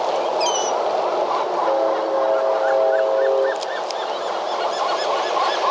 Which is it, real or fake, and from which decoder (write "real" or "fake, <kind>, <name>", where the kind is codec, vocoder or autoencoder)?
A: real